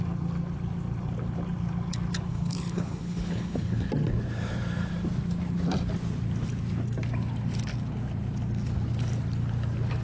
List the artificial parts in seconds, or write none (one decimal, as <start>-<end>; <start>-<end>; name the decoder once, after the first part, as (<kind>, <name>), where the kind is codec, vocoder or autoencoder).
2.3-3.9 (codec, HILCodec)